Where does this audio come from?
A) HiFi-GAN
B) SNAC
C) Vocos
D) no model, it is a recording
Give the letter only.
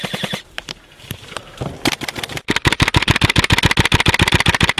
D